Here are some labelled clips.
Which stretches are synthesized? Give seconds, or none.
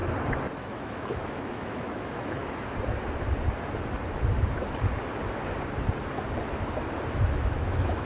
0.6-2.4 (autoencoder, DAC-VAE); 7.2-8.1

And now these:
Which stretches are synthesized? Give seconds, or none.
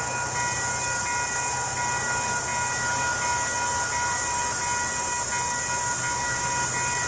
none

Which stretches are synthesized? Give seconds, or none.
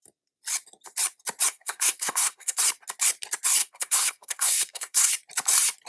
1.5-2.6 (codec, SNAC); 3.6-5.1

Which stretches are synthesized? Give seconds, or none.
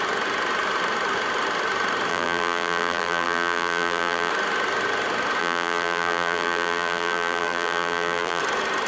2.1-4.3 (vocoder, BigVGAN v2); 5.4-8.4